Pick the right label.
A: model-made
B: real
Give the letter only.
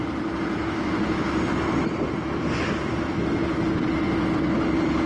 B